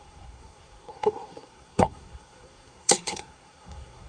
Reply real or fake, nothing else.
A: fake